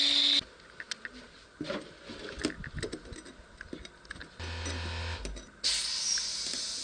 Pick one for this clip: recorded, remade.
recorded